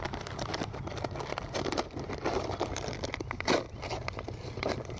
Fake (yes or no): no